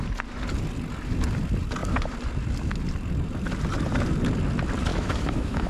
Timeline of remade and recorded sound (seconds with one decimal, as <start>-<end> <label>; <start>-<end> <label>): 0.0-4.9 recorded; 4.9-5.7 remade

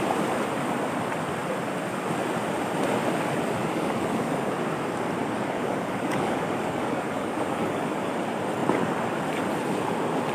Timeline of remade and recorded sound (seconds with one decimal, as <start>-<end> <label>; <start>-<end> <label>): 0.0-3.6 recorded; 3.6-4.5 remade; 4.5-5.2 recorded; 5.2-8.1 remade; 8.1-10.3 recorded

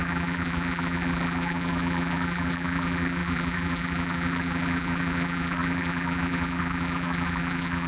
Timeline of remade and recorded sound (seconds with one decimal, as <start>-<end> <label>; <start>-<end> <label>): 0.0-7.9 remade

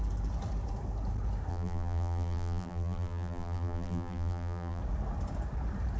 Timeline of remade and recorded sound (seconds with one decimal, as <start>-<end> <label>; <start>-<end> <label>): 0.0-1.5 recorded; 1.5-4.8 remade; 4.8-6.0 recorded